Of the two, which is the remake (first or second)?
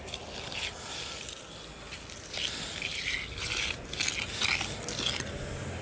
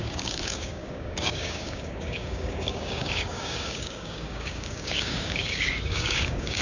second